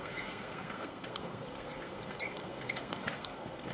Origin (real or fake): fake